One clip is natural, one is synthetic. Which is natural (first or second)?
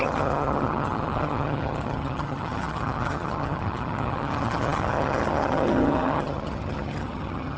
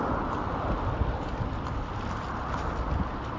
second